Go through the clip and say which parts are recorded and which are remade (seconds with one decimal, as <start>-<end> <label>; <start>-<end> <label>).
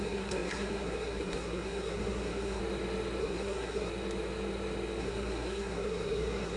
0.0-2.6 remade; 2.6-3.2 recorded; 3.2-3.9 remade; 3.9-5.0 recorded; 5.0-6.6 remade